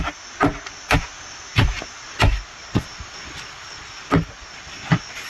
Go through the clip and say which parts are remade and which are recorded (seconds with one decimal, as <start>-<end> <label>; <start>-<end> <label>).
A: 0.0-5.3 recorded